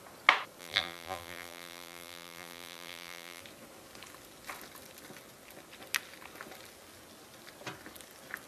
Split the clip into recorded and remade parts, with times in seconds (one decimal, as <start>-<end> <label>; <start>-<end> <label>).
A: 0.0-0.6 recorded; 0.6-3.4 remade; 3.4-8.5 recorded